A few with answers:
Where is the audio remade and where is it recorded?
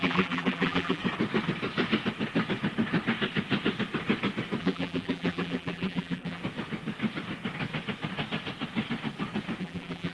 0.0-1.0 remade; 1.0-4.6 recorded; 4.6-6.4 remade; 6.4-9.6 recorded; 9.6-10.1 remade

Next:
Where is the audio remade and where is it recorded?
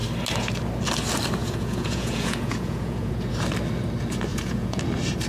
0.0-1.4 recorded; 1.4-3.3 remade; 3.3-4.3 recorded; 4.3-4.8 remade; 4.8-5.3 recorded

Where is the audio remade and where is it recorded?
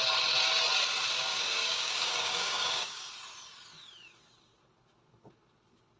0.0-1.3 recorded; 1.3-3.1 remade; 3.1-6.0 recorded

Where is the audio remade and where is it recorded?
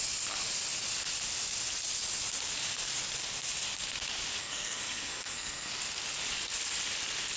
0.0-4.4 recorded; 4.4-5.7 remade; 5.7-7.4 recorded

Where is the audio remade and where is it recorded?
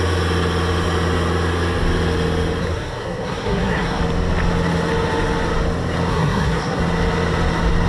0.0-2.6 recorded; 2.6-4.0 remade; 4.0-6.1 recorded; 6.1-6.8 remade; 6.8-7.9 recorded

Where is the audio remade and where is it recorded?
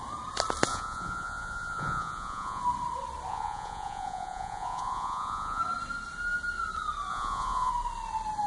0.0-0.7 recorded; 0.7-2.6 remade; 2.6-3.3 recorded; 3.3-5.6 remade; 5.6-7.1 recorded; 7.1-7.7 remade; 7.7-8.5 recorded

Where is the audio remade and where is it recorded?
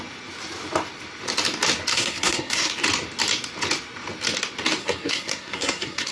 0.0-1.9 recorded; 1.9-2.7 remade; 2.7-4.8 recorded; 4.8-6.1 remade